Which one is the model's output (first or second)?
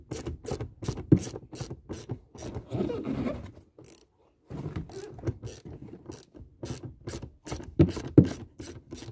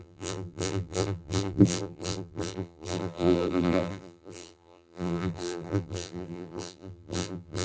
second